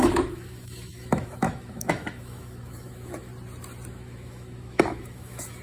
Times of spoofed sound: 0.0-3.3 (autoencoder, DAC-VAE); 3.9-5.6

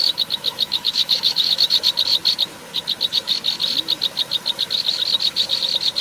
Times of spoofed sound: 0.0-1.7 (autoencoder, DAC-VAE)

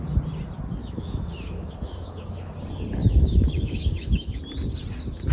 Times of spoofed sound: 0.8-2.5 (autoencoder, DAC-VAE); 3.0-4.4

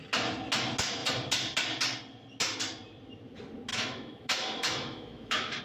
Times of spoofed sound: 3.7-5.6 (autoencoder, DAC-VAE)

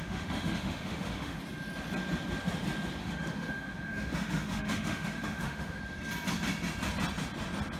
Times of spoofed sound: 0.0-1.4 (autoencoder, DAC-VAE); 3.0-5.8

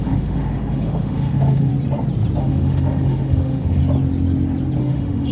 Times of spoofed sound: 0.0-1.7 (autoencoder, DAC-VAE); 2.4-3.8; 4.8-5.3

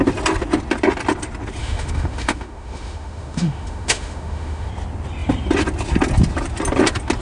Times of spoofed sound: 1.6-4.7 (autoencoder, DAC-VAE)